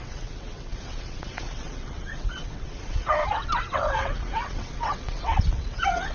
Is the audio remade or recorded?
remade